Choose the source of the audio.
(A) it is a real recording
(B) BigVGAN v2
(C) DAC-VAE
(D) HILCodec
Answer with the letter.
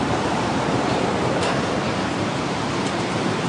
B